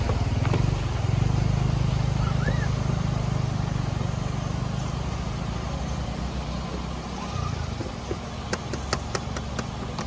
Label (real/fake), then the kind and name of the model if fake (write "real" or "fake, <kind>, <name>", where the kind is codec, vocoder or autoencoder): real